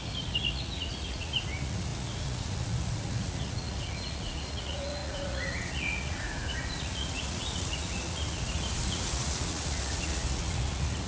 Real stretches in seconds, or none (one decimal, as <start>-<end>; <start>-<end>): none